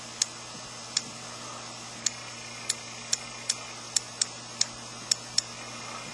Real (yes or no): yes